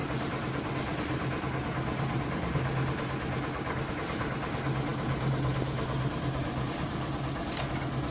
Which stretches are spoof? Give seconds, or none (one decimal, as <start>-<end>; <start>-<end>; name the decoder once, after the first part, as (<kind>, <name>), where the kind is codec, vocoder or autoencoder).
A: none